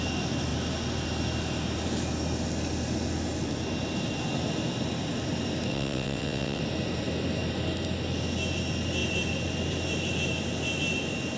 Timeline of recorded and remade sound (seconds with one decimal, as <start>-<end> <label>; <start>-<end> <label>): 0.0-5.7 recorded; 5.7-6.6 remade; 6.6-11.4 recorded

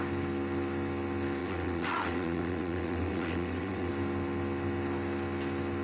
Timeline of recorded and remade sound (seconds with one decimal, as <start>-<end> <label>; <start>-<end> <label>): 0.0-1.4 recorded; 1.4-3.9 remade; 3.9-5.8 recorded